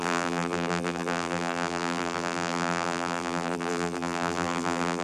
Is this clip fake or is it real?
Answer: fake